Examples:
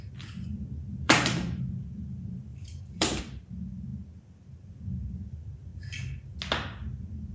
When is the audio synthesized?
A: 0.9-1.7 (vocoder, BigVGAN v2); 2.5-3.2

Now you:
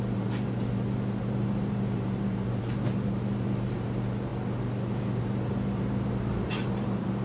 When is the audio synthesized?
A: 0.0-4.3 (vocoder, BigVGAN v2); 5.2-7.2

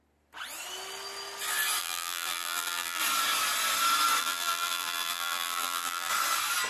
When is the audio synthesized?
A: 1.8-3.0 (vocoder, BigVGAN v2); 4.2-6.1

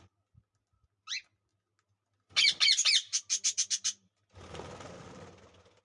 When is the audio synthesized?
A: none

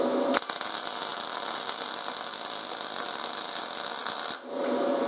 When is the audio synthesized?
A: 1.1-3.4 (vocoder, BigVGAN v2); 4.0-5.1